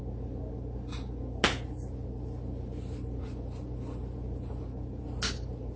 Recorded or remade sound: recorded